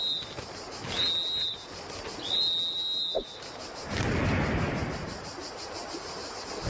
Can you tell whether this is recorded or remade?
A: recorded